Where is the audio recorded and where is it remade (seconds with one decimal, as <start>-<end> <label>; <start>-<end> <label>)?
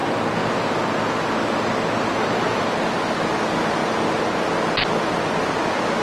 0.0-0.7 remade; 0.7-2.2 recorded; 2.2-3.1 remade; 3.1-6.0 recorded